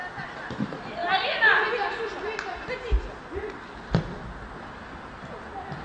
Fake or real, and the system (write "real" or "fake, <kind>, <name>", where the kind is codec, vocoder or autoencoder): real